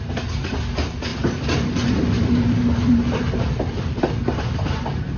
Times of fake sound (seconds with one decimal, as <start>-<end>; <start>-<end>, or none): 1.1-4.2